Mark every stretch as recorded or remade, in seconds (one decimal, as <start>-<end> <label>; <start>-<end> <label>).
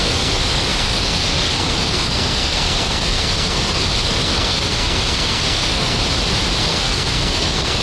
0.0-6.0 remade; 6.0-6.6 recorded; 6.6-7.8 remade